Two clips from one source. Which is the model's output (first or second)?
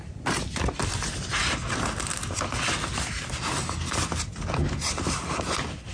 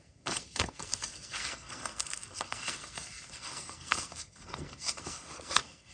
second